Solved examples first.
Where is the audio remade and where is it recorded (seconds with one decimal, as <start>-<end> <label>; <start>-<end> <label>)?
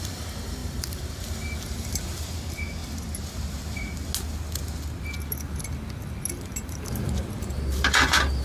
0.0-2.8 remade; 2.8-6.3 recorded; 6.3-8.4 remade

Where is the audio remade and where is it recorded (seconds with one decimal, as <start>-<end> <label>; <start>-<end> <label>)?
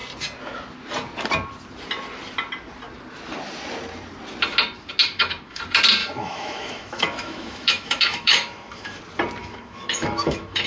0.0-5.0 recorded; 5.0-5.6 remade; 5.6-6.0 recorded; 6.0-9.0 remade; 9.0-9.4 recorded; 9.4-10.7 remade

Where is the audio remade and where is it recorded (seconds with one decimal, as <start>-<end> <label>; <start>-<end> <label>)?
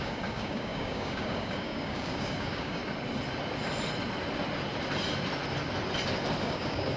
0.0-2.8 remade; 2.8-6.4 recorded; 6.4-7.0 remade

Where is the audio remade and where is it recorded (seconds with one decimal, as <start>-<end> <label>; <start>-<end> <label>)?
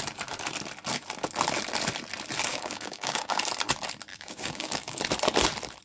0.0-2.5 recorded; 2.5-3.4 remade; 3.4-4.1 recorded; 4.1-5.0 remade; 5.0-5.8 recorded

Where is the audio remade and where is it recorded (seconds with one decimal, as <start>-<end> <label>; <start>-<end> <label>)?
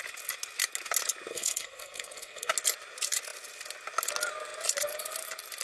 0.0-1.3 recorded; 1.3-2.5 remade; 2.5-5.6 recorded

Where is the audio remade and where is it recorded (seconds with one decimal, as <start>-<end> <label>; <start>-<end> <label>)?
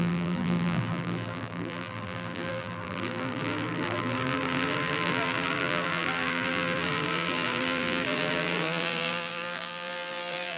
0.0-10.6 remade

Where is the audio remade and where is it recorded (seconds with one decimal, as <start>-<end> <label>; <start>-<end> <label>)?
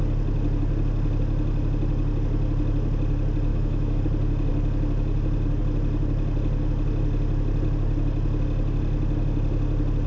0.0-3.5 recorded; 3.5-4.0 remade; 4.0-10.1 recorded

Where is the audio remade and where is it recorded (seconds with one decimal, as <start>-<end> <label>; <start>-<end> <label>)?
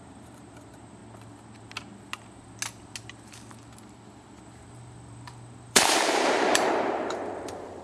0.0-1.0 remade; 1.0-4.4 recorded; 4.4-7.8 remade